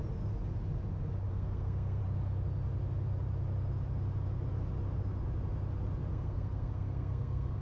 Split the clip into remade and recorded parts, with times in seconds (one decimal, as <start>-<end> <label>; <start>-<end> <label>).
0.0-1.3 recorded; 1.3-2.0 remade; 2.0-6.1 recorded; 6.1-7.6 remade